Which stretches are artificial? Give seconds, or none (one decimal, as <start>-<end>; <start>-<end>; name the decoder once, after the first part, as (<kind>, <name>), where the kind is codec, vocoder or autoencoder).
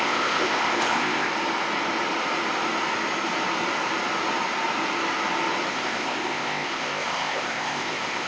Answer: 0.0-1.3 (codec, ZipCodec); 5.7-8.3